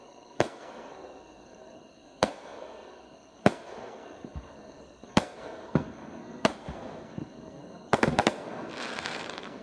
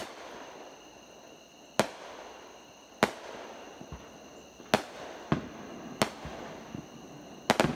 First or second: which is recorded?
second